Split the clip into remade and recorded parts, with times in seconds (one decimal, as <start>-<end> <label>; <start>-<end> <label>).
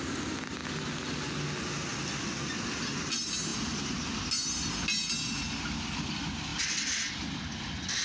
0.0-8.0 recorded